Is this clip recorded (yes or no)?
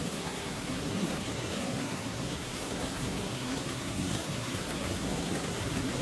no